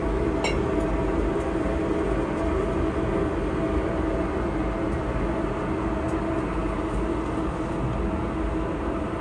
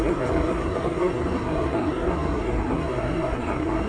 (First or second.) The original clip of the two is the first